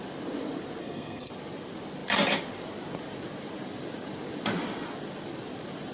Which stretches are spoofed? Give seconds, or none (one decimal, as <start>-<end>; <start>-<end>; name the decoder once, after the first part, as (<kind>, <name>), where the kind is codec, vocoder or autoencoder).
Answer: 0.8-1.3 (codec, SNAC)